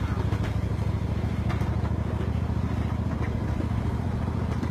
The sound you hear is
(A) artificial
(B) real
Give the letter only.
B